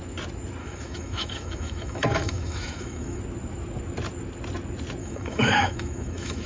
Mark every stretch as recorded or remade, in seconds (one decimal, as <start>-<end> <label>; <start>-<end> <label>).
0.0-0.6 recorded; 0.6-3.2 remade; 3.2-5.0 recorded; 5.0-6.5 remade